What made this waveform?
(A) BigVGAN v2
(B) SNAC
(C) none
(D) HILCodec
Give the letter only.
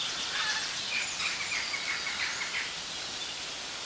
A